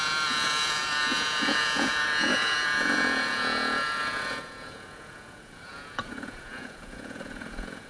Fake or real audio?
fake